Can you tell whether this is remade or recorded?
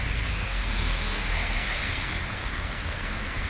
remade